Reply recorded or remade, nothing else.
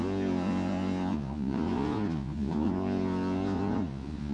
remade